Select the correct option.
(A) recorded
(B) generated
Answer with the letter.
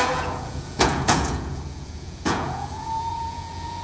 B